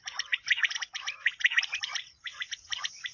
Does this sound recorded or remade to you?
remade